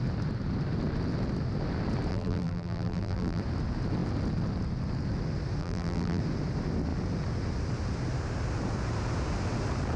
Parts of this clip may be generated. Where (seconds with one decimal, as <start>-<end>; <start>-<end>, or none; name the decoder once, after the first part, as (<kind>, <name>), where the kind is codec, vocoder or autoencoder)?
2.1-3.4 (vocoder, BigVGAN v2); 5.6-6.2